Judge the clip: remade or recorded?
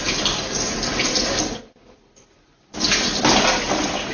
recorded